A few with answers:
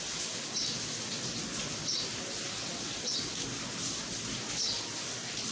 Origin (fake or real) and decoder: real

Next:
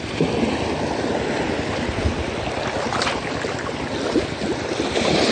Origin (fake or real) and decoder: real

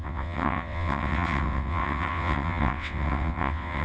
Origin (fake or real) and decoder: fake, vocoder, WaveNeXt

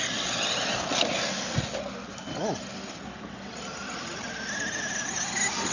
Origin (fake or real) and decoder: real